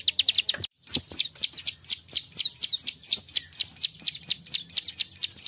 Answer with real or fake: real